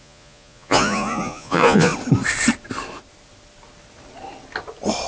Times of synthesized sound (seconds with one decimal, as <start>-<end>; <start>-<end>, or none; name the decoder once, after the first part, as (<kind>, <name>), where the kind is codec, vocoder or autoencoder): 0.0-1.9 (vocoder, Vocos)